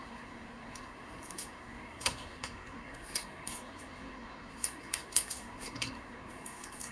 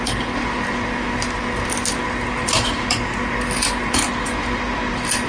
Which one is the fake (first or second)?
first